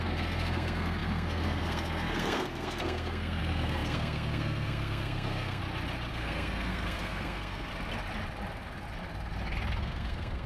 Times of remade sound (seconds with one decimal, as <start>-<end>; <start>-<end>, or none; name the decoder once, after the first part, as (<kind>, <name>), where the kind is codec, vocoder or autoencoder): 0.0-5.6 (codec, SNAC); 6.1-7.7; 9.8-10.5